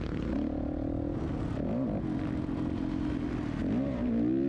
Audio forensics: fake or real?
real